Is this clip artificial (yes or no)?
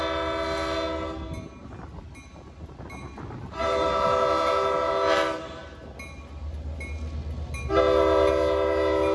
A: no